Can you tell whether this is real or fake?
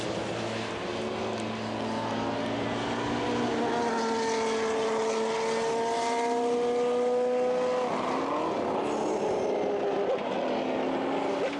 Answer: real